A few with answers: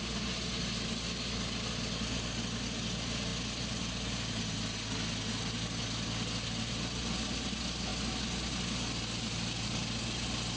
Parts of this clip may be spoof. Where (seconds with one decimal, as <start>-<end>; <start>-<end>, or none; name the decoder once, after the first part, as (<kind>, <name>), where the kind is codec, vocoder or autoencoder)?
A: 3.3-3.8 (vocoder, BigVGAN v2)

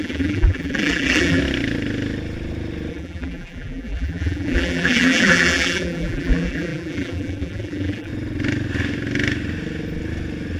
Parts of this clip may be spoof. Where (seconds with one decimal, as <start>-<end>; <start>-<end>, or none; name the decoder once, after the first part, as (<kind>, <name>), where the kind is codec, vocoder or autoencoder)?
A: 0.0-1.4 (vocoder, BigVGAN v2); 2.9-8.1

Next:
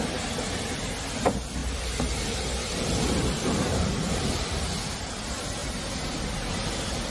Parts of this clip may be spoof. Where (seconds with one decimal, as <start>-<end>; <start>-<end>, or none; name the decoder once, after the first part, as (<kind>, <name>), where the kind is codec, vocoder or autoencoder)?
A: 1.6-4.5 (vocoder, BigVGAN v2)

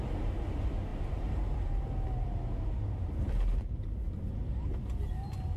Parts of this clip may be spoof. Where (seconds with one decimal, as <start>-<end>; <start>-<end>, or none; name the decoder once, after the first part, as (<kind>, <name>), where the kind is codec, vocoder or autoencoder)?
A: 0.9-4.3 (vocoder, BigVGAN v2)

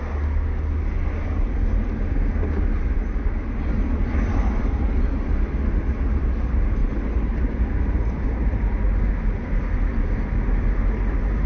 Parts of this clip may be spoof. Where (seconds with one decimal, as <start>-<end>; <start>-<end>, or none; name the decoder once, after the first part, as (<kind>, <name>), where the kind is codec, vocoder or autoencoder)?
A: 6.8-9.1 (vocoder, BigVGAN v2)

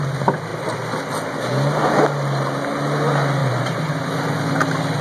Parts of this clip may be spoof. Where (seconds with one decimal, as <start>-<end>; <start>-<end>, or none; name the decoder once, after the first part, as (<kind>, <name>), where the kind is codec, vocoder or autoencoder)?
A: 0.5-1.0 (vocoder, BigVGAN v2); 3.4-4.1